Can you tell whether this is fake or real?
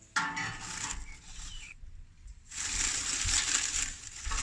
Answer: real